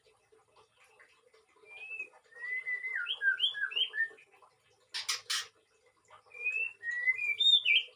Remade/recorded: recorded